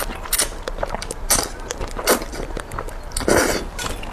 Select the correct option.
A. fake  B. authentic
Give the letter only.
B